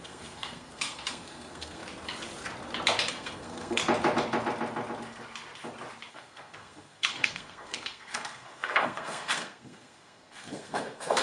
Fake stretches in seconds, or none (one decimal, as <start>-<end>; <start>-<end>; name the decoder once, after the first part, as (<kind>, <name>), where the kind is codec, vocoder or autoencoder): 0.0-1.8 (codec, SNAC); 3.1-3.8; 6.1-11.2